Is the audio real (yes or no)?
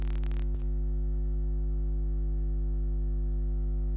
yes